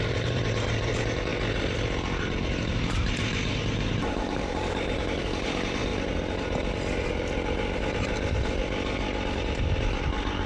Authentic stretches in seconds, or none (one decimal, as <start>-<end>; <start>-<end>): 1.3-2.7; 5.9-10.5